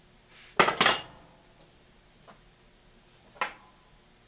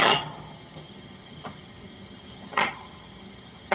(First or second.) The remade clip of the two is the second